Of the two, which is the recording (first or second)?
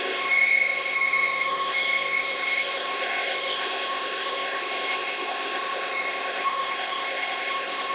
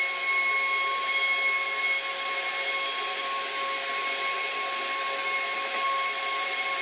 second